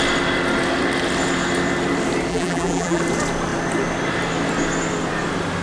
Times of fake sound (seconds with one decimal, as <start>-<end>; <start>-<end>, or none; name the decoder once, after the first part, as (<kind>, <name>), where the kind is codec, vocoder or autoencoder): 2.3-3.0 (vocoder, BigVGAN v2)